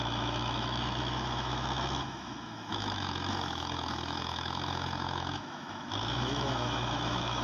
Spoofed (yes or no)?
yes